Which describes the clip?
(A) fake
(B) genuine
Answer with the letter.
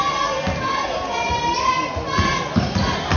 B